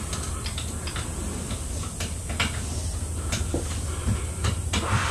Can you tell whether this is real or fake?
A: real